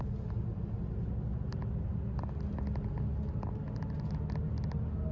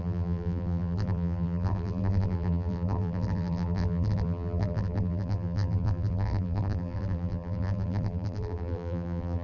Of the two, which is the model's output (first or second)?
second